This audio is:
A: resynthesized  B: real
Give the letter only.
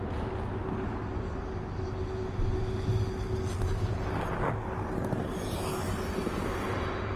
B